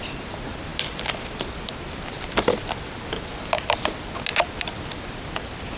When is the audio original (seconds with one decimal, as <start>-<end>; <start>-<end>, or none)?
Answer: 0.0-5.8